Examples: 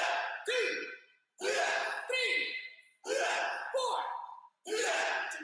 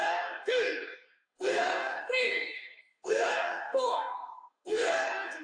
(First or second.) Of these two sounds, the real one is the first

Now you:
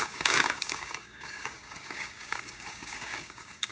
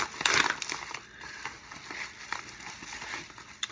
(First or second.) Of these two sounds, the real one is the second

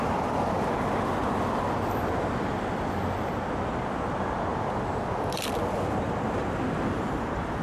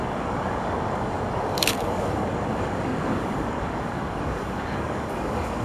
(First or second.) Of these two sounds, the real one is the first